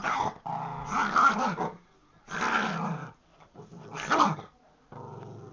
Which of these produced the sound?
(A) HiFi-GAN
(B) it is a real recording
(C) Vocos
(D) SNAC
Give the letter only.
B